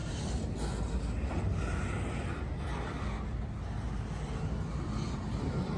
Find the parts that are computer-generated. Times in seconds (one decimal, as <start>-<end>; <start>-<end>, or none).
none

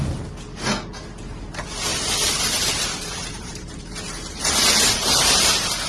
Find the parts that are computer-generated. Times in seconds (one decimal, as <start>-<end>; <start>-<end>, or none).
1.9-3.7

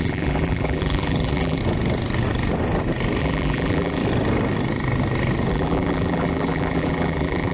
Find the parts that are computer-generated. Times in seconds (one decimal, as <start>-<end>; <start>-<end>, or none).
0.0-1.6; 3.2-4.0; 5.5-7.5

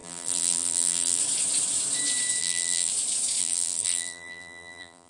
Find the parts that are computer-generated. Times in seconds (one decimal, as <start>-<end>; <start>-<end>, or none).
0.0-1.2; 2.4-2.9; 3.4-5.1

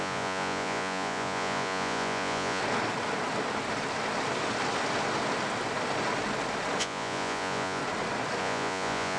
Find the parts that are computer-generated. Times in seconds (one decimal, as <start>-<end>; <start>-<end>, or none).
0.0-2.6; 6.8-7.8; 8.4-9.2

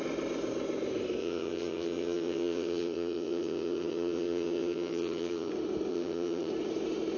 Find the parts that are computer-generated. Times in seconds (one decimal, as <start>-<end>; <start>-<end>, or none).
1.2-5.5; 5.9-6.5

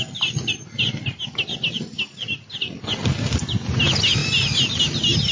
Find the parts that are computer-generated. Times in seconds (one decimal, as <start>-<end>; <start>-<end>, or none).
none